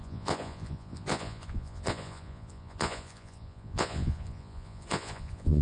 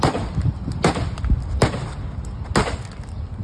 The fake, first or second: first